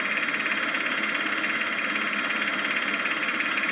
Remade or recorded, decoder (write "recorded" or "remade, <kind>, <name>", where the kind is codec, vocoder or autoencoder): recorded